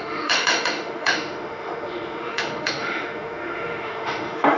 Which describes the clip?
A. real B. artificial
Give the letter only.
B